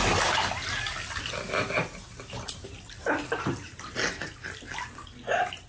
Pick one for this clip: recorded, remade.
recorded